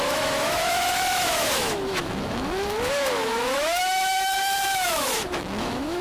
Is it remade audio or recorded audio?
remade